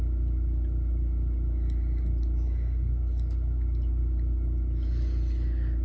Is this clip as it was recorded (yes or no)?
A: yes